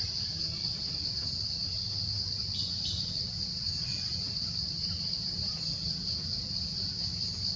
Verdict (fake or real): real